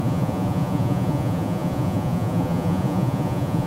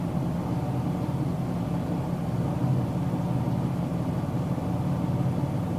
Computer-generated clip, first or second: first